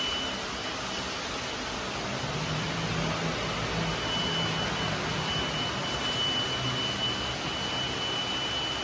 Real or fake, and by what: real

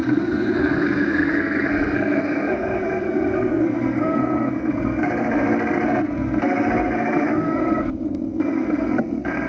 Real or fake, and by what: fake, codec, SNAC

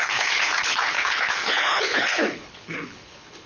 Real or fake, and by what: fake, codec, HILCodec